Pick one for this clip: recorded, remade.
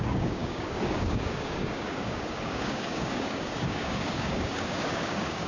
remade